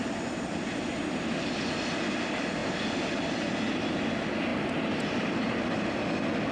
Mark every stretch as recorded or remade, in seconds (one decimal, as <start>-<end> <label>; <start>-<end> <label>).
0.0-6.5 recorded